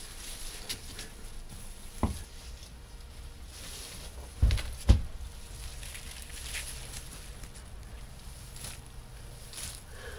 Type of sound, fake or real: real